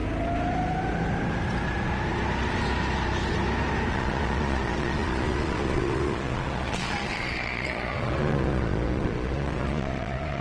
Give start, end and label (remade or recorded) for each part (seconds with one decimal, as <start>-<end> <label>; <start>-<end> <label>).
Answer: 0.0-3.9 recorded; 3.9-10.4 remade